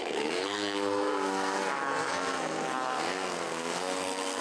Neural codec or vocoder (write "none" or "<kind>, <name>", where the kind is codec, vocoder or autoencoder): codec, SNAC